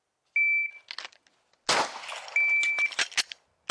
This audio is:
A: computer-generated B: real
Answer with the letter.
B